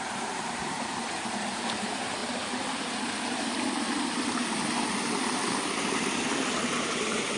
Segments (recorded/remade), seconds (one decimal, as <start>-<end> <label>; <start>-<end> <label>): 0.0-2.2 remade; 2.2-6.6 recorded; 6.6-7.4 remade